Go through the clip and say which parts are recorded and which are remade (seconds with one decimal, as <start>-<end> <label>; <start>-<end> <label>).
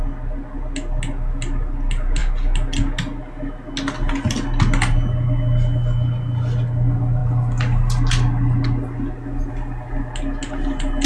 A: 0.0-11.1 recorded